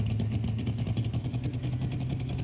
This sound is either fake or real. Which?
real